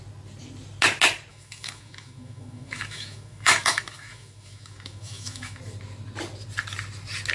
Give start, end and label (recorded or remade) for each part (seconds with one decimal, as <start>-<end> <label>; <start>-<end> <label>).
0.0-1.3 recorded; 1.3-5.6 remade; 5.6-7.3 recorded